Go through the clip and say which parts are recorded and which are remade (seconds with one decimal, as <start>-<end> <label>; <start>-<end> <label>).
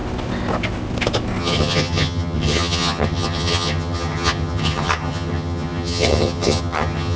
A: 0.0-1.4 recorded; 1.4-7.2 remade